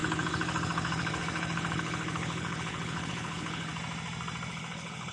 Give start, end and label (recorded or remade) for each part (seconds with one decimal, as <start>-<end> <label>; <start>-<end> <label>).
0.0-3.7 remade; 3.7-4.5 recorded; 4.5-5.1 remade